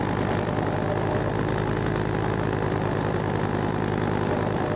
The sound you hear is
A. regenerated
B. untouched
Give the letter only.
A